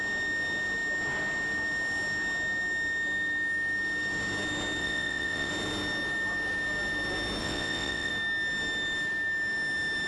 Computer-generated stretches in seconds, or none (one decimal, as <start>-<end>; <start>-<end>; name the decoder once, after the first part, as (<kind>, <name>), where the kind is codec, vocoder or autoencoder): 4.8-5.5 (vocoder, WaveNeXt); 7.4-8.1